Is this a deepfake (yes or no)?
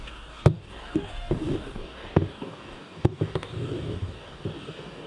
yes